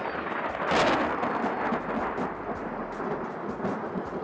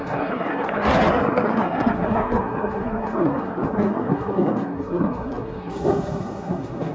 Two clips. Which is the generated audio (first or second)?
second